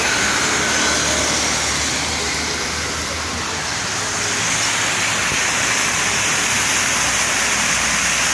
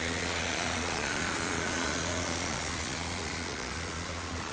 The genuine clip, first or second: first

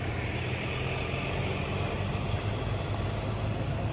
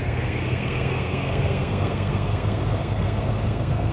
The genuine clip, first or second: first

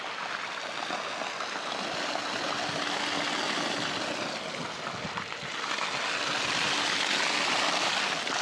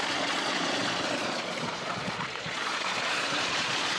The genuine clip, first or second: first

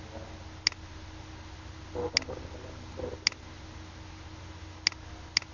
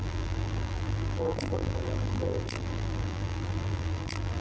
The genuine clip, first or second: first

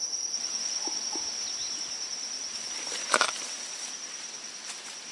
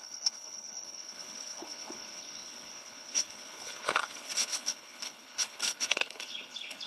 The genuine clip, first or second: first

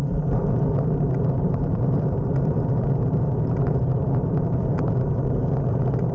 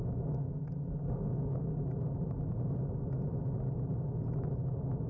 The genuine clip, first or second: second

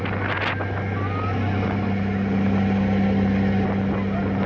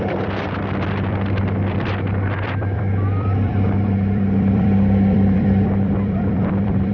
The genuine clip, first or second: first